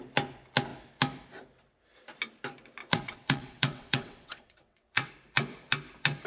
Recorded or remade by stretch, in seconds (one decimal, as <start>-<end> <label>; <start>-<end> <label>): 0.0-2.8 recorded; 2.8-5.1 remade; 5.1-6.3 recorded